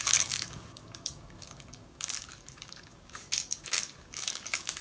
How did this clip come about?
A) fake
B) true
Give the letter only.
A